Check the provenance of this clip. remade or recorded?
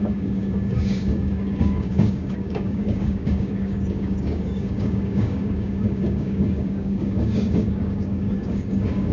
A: remade